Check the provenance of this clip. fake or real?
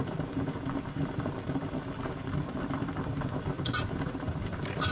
fake